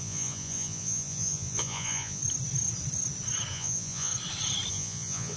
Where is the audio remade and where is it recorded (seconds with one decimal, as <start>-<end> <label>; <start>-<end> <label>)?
0.0-2.2 remade; 2.2-3.5 recorded; 3.5-4.1 remade; 4.1-4.7 recorded; 4.7-5.4 remade